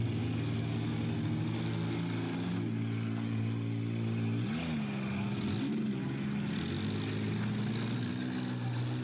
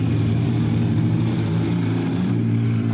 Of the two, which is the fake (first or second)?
second